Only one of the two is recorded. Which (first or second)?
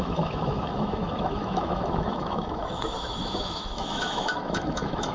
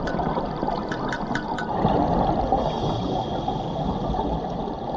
second